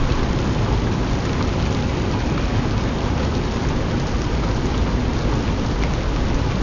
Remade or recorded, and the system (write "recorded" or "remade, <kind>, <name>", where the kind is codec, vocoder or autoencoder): recorded